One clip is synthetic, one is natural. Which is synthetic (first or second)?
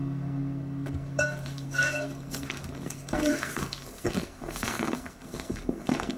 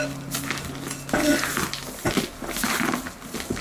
first